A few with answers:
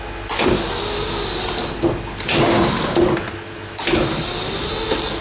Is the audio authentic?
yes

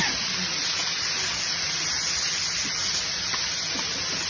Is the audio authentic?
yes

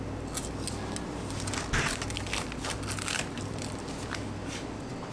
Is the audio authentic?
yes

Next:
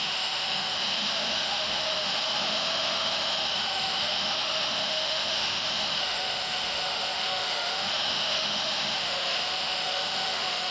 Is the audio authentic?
no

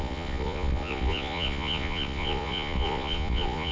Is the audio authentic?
no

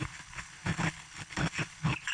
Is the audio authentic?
no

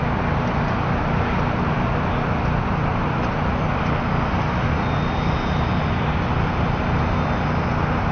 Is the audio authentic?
yes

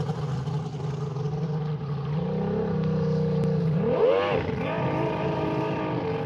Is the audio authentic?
yes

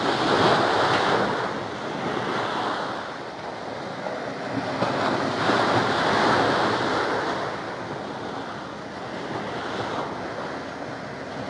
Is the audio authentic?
yes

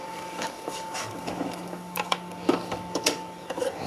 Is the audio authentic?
no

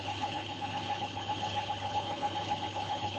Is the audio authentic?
no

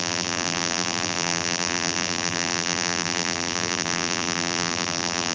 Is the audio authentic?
no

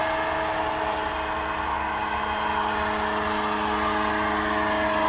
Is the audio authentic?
yes